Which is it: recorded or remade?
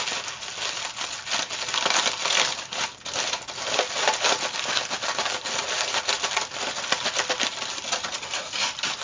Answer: recorded